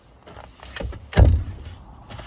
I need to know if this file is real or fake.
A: real